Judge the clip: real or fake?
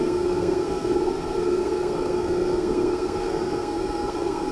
fake